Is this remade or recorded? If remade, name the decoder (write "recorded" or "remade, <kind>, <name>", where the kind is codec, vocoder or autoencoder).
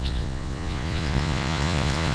remade, vocoder, Vocos